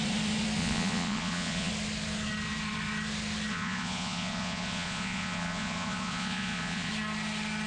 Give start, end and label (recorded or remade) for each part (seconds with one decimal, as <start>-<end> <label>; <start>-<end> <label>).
0.0-0.6 recorded; 0.6-1.7 remade; 1.7-3.5 recorded; 3.5-6.9 remade; 6.9-7.7 recorded